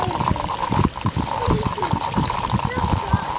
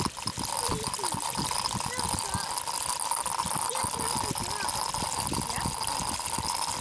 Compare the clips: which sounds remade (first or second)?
first